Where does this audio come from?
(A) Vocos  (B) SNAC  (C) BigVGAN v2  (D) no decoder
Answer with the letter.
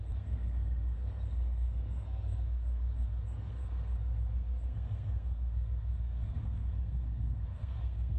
B